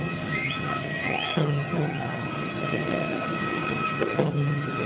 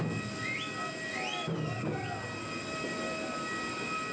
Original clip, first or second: second